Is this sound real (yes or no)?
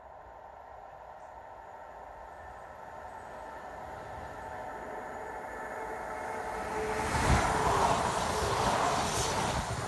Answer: yes